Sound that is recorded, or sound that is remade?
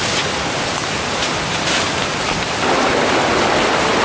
recorded